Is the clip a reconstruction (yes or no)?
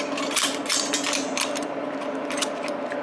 no